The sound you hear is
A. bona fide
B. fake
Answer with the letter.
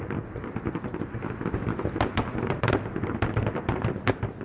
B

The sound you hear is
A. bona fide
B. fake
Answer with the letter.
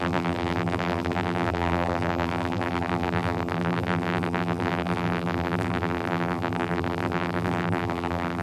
B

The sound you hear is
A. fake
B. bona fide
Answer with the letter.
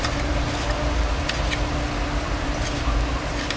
B